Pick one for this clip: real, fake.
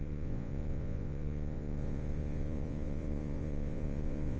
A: fake